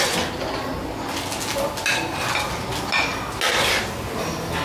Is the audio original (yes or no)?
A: yes